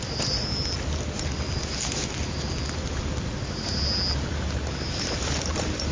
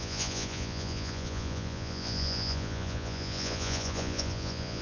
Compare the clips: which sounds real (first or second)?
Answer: first